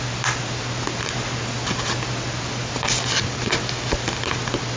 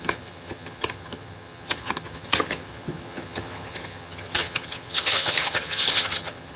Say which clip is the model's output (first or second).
second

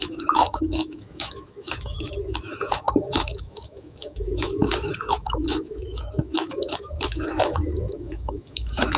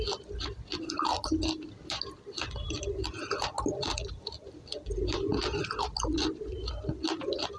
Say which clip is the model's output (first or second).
first